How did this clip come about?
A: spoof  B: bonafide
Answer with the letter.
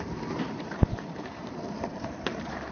A